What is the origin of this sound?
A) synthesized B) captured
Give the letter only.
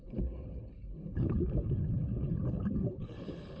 A